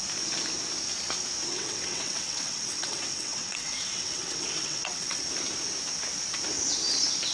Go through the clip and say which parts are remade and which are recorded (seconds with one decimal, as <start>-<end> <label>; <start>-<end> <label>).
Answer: 0.0-1.5 recorded; 1.5-5.2 remade; 5.2-7.3 recorded